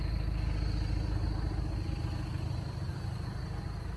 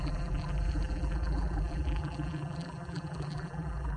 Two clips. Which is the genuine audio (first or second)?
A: first